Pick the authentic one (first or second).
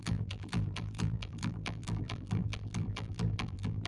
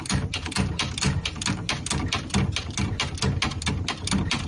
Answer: second